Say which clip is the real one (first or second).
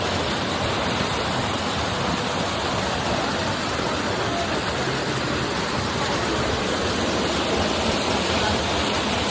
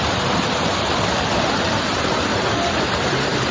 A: first